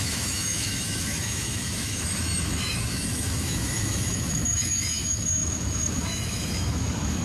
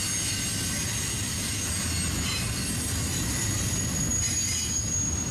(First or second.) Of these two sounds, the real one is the second